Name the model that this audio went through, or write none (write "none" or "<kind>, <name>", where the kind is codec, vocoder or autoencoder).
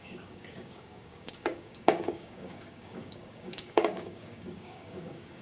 codec, DAC